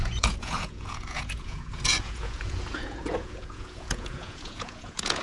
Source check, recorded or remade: remade